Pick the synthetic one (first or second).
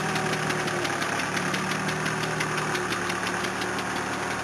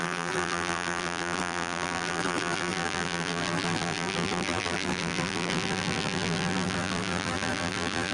second